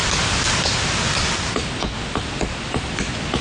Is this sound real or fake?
real